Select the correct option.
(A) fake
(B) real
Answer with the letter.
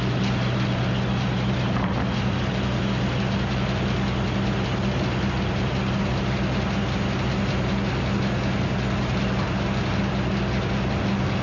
B